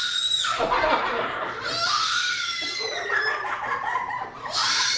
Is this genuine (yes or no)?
no